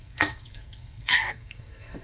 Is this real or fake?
fake